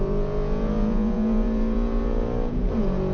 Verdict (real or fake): fake